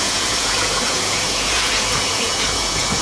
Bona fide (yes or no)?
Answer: no